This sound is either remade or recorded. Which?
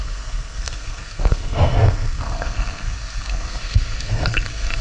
remade